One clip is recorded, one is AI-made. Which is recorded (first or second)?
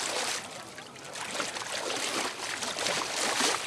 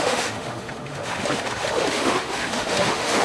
first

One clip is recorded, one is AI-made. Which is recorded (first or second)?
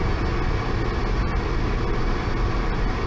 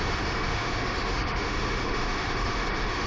first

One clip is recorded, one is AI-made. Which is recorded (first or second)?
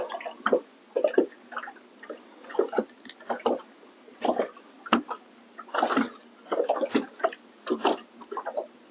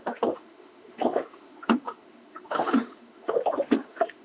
first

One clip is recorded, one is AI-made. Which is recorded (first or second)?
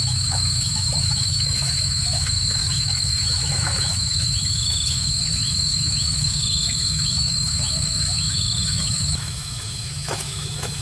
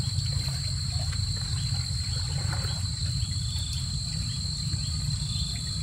second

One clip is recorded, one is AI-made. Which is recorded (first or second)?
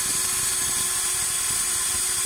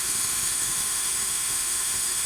first